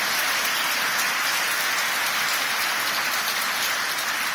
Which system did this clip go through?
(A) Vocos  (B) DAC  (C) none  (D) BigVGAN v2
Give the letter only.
C